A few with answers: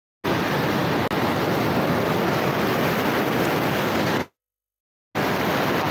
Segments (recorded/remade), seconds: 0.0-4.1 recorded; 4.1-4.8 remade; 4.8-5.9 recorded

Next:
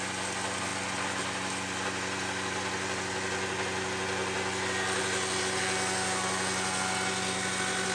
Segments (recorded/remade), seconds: 0.0-7.9 recorded

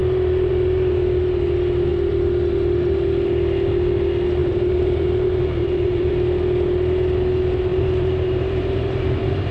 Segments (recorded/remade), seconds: 0.0-4.4 recorded; 4.4-6.1 remade; 6.1-7.7 recorded; 7.7-9.5 remade

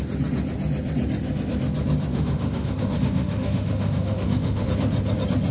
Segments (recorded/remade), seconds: 0.0-2.1 recorded; 2.1-4.7 remade; 4.7-5.5 recorded